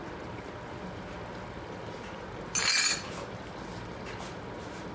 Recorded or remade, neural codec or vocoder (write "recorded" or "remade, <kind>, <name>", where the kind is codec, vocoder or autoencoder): recorded